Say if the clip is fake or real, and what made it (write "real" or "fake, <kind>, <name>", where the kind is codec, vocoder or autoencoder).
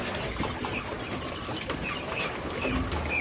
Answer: real